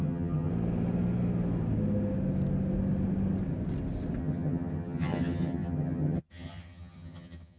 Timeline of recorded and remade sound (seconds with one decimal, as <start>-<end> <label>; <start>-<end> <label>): 0.0-0.5 remade; 0.5-4.2 recorded; 4.2-7.6 remade